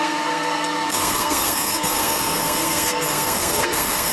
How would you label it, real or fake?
fake